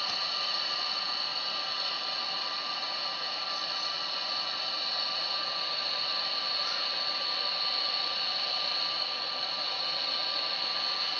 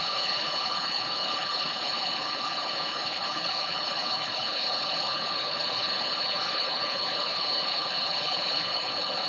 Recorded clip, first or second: first